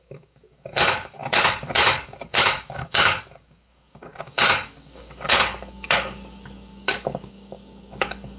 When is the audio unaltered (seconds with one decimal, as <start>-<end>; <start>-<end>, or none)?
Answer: none